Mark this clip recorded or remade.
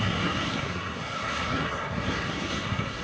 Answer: remade